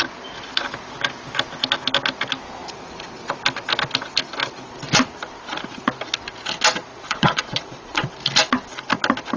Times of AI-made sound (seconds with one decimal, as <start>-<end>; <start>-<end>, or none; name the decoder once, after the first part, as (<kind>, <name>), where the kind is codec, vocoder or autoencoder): 6.9-8.1 (vocoder, Vocos)